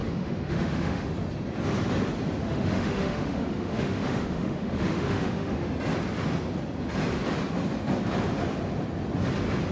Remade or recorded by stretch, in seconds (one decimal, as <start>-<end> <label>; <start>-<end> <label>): 0.0-1.1 remade; 1.1-2.4 recorded; 2.4-5.7 remade; 5.7-9.7 recorded